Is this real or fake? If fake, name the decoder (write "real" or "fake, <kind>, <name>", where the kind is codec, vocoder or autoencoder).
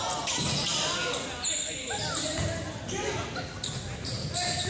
real